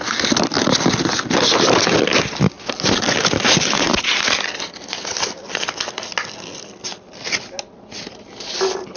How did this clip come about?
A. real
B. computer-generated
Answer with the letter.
A